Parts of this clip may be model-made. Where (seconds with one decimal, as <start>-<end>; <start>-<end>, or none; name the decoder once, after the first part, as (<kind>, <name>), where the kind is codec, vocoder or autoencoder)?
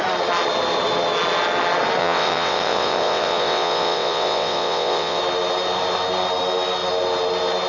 2.0-5.2 (vocoder, WaveNeXt)